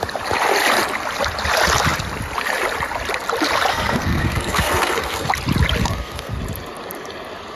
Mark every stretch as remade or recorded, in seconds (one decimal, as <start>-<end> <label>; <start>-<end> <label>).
0.0-3.7 recorded; 3.7-5.3 remade; 5.3-5.8 recorded; 5.8-6.4 remade; 6.4-7.6 recorded